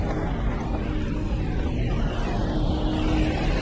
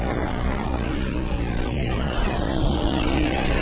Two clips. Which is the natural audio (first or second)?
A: first